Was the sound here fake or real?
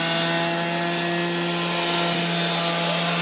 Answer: real